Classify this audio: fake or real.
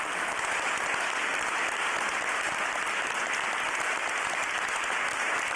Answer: real